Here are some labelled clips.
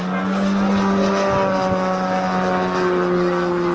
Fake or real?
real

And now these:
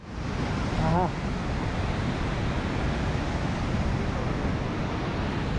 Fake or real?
real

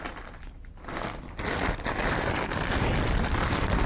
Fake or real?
real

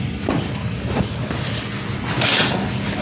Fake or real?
real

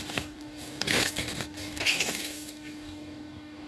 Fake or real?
fake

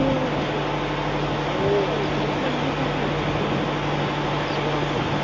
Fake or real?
real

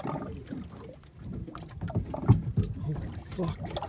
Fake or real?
real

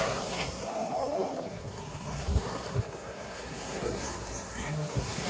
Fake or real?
fake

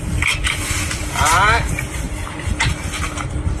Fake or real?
real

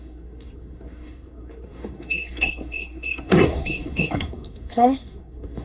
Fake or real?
fake